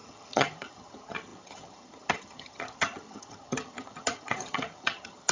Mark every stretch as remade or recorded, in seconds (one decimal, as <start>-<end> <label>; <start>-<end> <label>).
0.0-5.3 remade